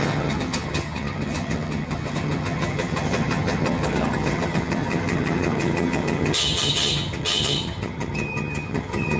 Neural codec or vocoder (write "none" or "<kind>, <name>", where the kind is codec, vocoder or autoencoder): vocoder, HiFi-GAN